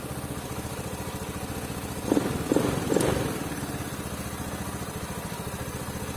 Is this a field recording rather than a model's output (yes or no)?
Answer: yes